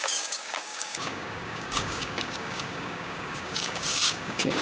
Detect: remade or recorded remade